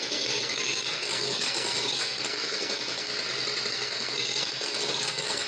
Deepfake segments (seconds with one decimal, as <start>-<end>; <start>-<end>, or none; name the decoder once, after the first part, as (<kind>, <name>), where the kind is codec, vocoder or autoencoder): 0.0-3.1 (codec, SNAC); 3.7-5.5